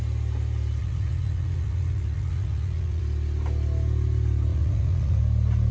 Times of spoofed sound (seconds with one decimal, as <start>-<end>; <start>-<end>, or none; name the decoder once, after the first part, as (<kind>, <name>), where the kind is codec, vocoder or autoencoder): 0.8-3.0 (vocoder, Vocos); 4.5-5.2